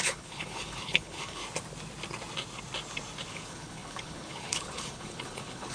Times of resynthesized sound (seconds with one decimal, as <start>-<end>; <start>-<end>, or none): 0.0-1.4; 3.3-5.7